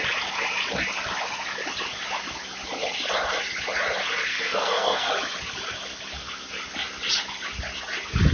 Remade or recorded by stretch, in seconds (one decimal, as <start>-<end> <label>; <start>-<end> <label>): 0.0-4.3 recorded; 4.3-5.1 remade; 5.1-8.3 recorded